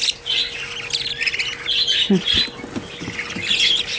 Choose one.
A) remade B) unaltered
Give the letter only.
B